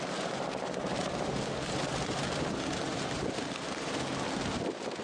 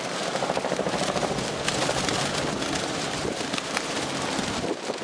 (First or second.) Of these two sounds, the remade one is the second